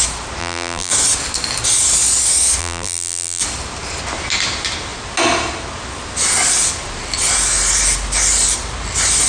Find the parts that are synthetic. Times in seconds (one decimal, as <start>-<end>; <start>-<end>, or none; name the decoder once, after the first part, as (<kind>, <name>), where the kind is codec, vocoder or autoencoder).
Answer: 0.4-0.9 (vocoder, BigVGAN v2); 2.6-3.4